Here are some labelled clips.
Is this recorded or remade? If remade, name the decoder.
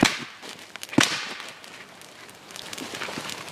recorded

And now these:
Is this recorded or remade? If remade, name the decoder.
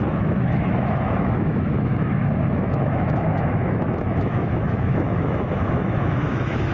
remade, autoencoder, DAC-VAE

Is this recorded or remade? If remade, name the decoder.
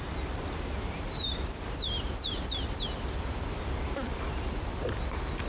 recorded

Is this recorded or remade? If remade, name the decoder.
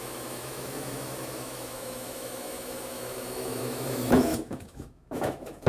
remade, autoencoder, DAC-VAE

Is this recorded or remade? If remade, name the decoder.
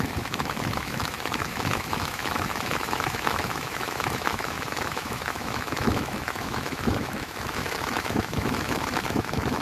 remade, autoencoder, DAC-VAE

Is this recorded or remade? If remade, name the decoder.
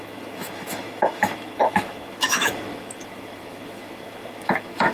remade, autoencoder, DAC-VAE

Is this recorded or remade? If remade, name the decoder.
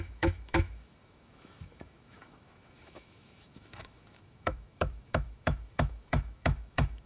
remade, autoencoder, DAC-VAE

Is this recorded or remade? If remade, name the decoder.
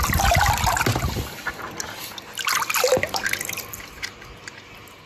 recorded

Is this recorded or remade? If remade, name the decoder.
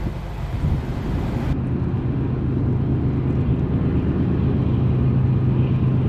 recorded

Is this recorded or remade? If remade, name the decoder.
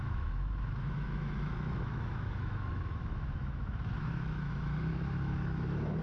remade, autoencoder, DAC-VAE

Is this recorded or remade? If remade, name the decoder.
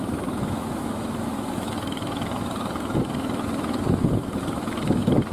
remade, autoencoder, DAC-VAE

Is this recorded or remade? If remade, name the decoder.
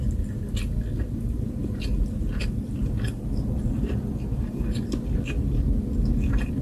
recorded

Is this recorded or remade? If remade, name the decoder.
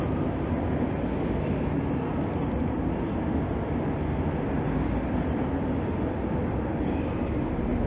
recorded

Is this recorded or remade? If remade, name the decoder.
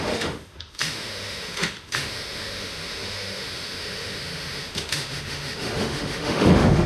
remade, autoencoder, DAC-VAE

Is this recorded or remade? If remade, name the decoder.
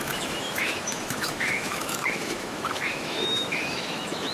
remade, autoencoder, DAC-VAE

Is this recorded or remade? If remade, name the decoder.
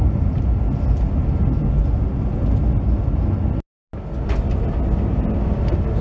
recorded